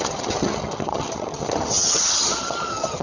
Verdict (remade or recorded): remade